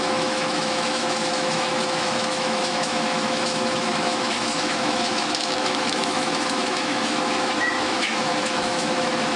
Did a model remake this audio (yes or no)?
yes